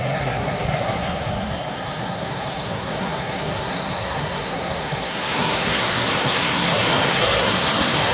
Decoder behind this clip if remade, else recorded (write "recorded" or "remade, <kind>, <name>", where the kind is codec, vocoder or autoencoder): remade, codec, SNAC